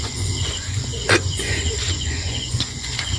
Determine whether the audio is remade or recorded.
remade